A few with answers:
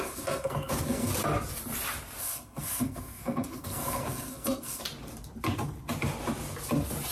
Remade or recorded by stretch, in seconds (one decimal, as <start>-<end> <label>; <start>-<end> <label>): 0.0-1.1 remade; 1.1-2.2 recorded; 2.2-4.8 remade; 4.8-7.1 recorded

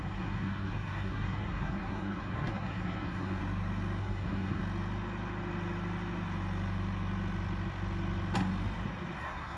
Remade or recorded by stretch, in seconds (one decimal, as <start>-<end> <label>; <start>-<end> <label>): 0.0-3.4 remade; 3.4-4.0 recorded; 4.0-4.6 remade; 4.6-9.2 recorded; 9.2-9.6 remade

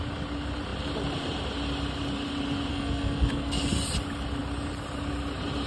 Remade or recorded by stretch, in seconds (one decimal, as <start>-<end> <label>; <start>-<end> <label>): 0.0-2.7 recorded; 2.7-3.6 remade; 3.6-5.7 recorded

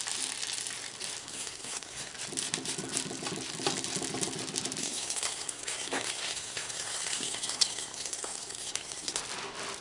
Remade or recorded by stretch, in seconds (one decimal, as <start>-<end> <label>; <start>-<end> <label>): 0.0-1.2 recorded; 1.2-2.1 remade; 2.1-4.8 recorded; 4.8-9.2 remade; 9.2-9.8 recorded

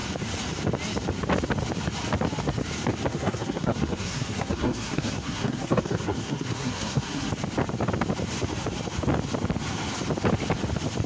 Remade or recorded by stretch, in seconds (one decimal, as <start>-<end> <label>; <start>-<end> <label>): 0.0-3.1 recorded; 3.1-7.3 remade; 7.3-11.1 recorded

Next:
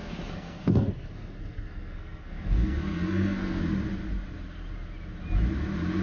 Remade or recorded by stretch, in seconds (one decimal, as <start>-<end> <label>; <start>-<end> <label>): 0.0-3.6 remade; 3.6-6.0 recorded

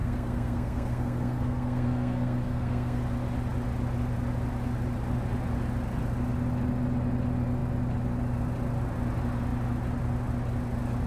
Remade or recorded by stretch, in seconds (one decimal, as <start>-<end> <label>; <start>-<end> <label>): 0.0-3.0 remade; 3.0-11.1 recorded

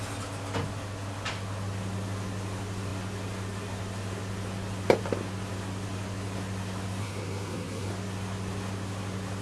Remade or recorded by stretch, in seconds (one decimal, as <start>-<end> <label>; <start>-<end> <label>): 0.0-7.0 recorded; 7.0-7.9 remade; 7.9-9.4 recorded